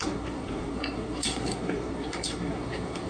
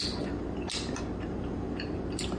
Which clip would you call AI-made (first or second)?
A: first